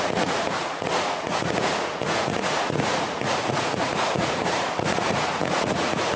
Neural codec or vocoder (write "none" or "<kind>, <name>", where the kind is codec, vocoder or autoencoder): vocoder, Vocos